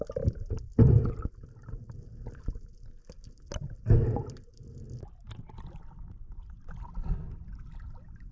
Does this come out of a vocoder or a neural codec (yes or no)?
no